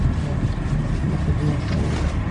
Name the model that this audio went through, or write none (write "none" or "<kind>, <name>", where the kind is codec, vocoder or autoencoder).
none